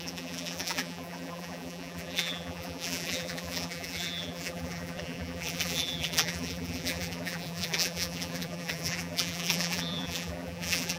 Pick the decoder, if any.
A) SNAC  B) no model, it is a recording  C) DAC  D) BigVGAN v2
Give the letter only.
D